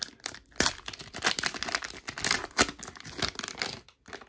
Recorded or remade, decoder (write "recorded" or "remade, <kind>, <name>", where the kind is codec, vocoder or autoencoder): recorded